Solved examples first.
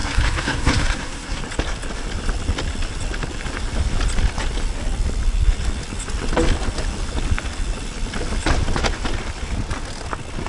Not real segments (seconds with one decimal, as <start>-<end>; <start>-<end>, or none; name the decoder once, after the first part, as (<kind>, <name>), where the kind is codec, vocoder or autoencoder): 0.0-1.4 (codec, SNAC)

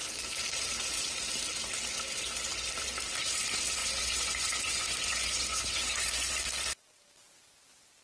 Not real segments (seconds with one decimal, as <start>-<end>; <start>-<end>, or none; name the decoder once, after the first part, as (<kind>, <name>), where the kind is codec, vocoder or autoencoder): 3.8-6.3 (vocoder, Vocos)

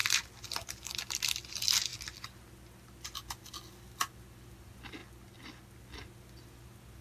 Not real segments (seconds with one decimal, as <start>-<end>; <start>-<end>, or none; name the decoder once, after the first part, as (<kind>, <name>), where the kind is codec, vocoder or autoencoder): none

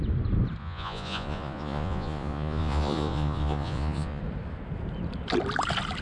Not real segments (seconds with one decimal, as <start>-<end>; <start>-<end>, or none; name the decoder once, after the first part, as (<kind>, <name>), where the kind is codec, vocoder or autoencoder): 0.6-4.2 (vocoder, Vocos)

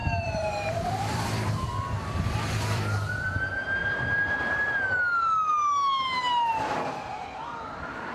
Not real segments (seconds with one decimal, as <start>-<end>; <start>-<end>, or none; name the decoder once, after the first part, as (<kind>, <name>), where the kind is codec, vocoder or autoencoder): 0.0-3.4 (vocoder, BigVGAN v2); 3.8-4.8